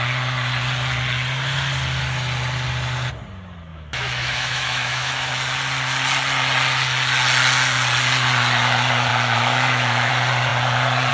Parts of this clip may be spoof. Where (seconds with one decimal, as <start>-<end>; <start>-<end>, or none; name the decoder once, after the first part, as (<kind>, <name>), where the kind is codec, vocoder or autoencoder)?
3.7-5.3 (autoencoder, DAC-VAE); 9.1-10.1